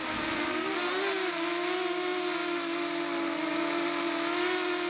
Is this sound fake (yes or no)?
no